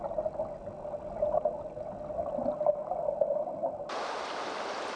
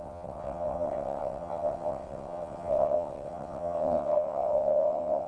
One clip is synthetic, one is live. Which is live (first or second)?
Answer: first